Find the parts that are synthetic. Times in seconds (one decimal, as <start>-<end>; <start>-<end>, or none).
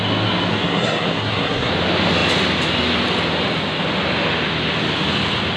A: 0.5-1.7